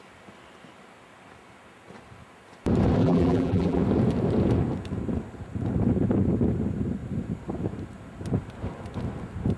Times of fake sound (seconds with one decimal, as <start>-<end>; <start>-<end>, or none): 3.0-3.8